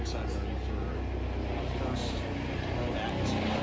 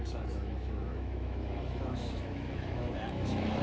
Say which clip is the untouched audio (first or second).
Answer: first